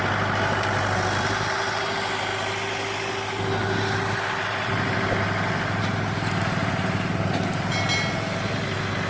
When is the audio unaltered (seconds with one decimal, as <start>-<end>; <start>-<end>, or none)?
0.0-9.1